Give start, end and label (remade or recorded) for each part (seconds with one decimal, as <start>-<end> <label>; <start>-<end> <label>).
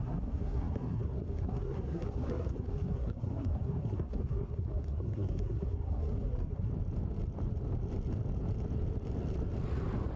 0.0-6.7 remade; 6.7-10.2 recorded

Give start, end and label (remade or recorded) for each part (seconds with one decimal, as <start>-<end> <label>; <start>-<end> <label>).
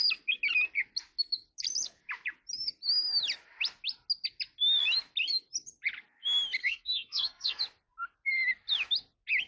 0.0-6.6 recorded; 6.6-7.6 remade; 7.6-9.5 recorded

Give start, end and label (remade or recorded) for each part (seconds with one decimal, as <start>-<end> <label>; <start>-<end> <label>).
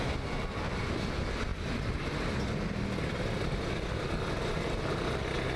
0.0-5.6 recorded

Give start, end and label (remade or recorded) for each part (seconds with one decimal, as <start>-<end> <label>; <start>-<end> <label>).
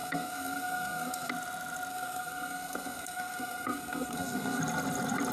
0.0-1.3 remade; 1.3-1.9 recorded; 1.9-4.6 remade; 4.6-5.3 recorded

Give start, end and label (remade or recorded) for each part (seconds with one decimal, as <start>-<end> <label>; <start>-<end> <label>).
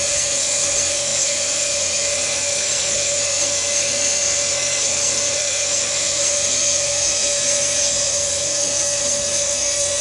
0.0-10.0 remade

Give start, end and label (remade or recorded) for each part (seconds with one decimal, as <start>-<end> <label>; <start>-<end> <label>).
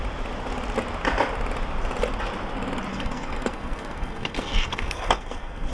0.0-2.9 recorded; 2.9-5.7 remade